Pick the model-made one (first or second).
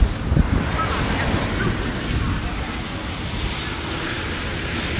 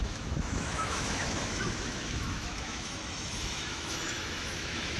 second